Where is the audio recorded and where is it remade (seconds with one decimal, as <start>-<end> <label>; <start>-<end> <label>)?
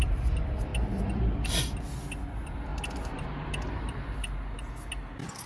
0.0-5.5 recorded